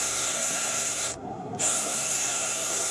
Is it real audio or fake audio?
fake